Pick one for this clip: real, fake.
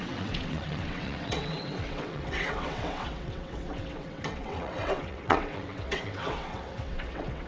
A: fake